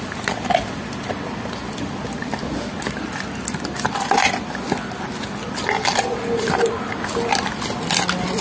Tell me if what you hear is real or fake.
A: real